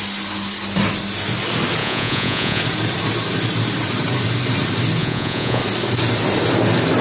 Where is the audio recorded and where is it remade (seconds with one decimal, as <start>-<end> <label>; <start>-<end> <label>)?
0.0-1.8 recorded; 1.8-2.6 remade; 2.6-5.0 recorded; 5.0-5.6 remade; 5.6-7.0 recorded